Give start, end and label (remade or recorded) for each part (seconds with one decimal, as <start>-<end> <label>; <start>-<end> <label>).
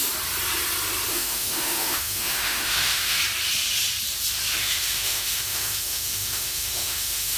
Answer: 0.0-1.1 recorded; 1.1-3.2 remade; 3.2-4.5 recorded; 4.5-7.4 remade